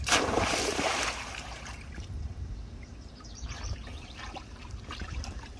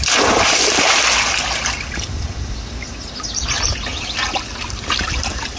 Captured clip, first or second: second